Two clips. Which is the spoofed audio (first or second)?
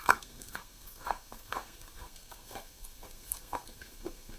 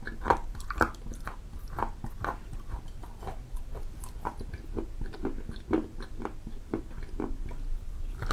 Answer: first